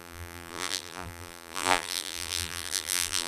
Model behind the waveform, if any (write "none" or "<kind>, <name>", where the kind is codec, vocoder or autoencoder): vocoder, BigVGAN v2